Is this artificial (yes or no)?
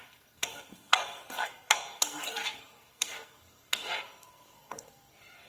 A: yes